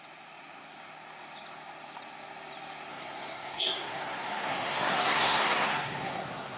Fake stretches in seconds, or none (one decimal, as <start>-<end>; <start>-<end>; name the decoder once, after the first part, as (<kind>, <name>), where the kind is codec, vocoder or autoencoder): 2.9-6.6 (codec, SNAC)